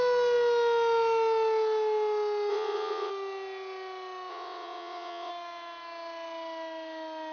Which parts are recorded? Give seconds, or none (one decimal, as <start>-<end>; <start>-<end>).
0.0-2.5; 3.1-4.3; 5.3-7.3